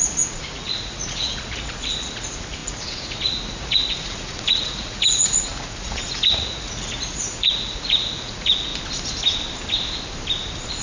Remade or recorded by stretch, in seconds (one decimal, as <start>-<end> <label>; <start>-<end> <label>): 0.0-8.7 remade; 8.7-10.8 recorded